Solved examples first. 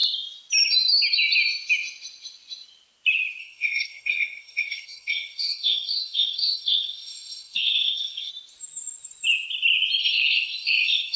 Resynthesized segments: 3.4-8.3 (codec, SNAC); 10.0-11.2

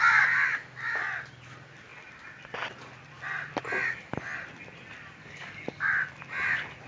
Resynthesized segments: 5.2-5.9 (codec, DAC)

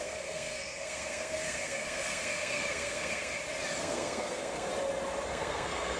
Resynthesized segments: 0.0-3.3 (codec, SNAC); 3.8-4.7; 5.3-6.0

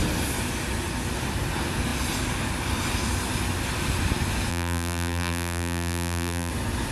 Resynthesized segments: 4.5-6.5 (vocoder, BigVGAN v2)